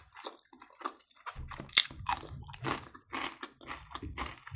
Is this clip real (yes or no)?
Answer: yes